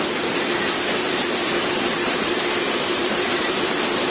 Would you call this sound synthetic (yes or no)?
yes